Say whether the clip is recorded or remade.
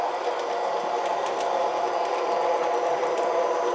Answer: recorded